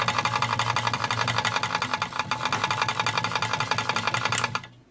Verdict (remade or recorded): recorded